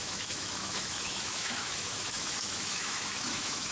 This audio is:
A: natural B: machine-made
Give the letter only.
B